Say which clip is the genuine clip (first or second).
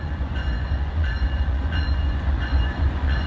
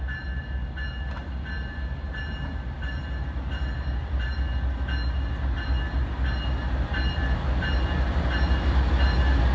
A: second